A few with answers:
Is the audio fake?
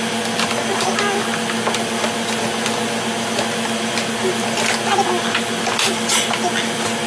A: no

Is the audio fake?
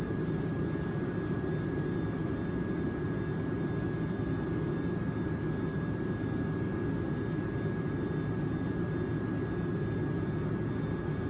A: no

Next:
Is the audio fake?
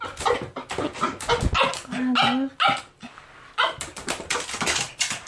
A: no